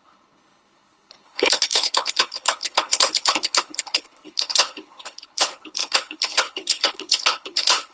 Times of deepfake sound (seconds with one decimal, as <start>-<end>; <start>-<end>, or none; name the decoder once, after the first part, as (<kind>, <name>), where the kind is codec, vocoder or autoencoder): 0.0-7.9 (codec, HILCodec)